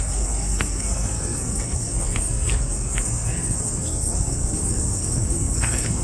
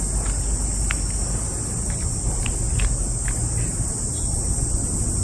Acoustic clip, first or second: second